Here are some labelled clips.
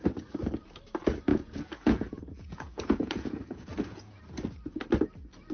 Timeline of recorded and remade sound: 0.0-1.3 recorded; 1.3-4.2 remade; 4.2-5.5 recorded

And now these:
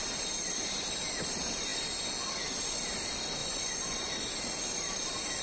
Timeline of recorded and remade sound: 0.0-3.4 recorded; 3.4-4.1 remade; 4.1-5.4 recorded

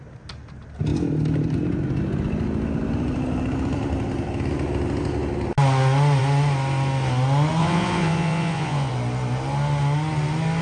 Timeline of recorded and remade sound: 0.0-7.6 recorded; 7.6-8.9 remade; 8.9-10.6 recorded

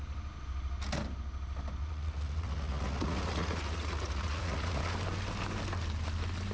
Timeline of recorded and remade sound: 0.0-1.8 recorded; 1.8-4.8 remade; 4.8-6.5 recorded